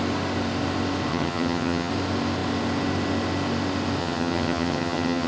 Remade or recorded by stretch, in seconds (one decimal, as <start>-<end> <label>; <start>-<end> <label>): 0.0-1.1 recorded; 1.1-1.9 remade; 1.9-4.0 recorded; 4.0-5.3 remade